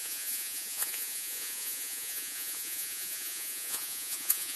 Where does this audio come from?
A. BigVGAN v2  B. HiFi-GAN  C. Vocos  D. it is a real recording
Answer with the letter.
C